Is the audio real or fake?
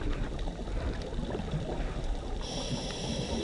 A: real